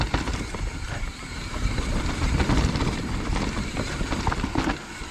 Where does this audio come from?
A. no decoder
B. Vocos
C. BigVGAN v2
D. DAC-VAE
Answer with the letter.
A